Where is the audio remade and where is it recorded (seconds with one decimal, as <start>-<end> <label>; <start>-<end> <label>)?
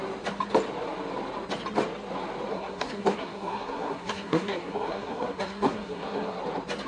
0.0-2.5 recorded; 2.5-6.4 remade; 6.4-6.9 recorded